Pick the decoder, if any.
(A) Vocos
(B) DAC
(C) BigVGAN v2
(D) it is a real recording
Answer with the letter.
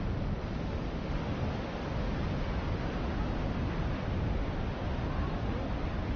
D